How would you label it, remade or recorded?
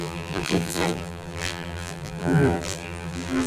remade